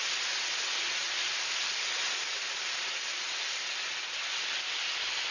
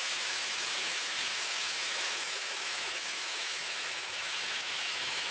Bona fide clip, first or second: first